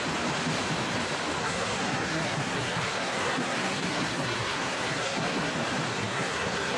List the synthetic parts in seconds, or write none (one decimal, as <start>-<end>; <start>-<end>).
1.4-5.5; 5.9-6.8